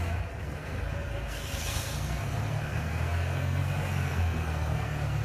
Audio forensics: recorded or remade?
remade